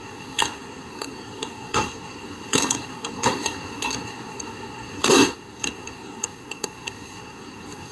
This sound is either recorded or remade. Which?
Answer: remade